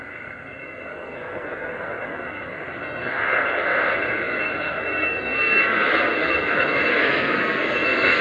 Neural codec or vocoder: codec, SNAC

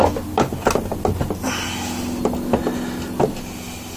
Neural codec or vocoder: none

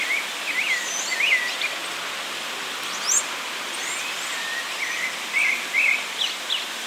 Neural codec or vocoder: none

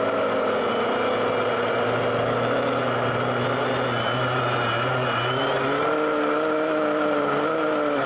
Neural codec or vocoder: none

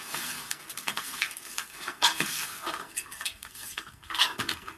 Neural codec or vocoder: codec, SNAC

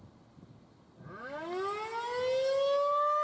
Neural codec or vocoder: none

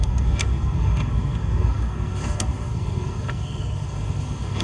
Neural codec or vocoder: codec, SNAC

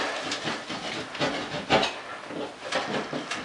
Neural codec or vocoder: none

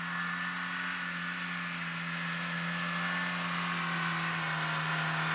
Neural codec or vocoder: none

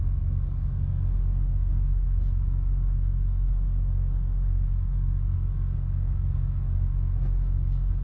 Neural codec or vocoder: codec, SNAC